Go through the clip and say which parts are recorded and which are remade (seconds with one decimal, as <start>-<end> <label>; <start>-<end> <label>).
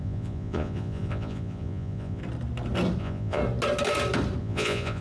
0.0-2.2 remade; 2.2-3.0 recorded; 3.0-3.4 remade; 3.4-4.4 recorded; 4.4-5.0 remade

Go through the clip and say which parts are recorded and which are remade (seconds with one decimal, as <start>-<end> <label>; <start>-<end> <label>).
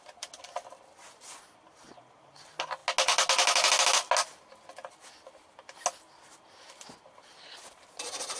0.0-8.4 recorded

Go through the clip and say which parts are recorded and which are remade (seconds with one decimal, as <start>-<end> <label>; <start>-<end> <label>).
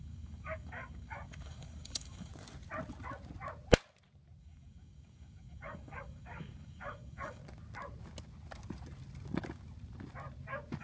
0.0-2.3 remade; 2.3-4.4 recorded; 4.4-7.4 remade; 7.4-10.8 recorded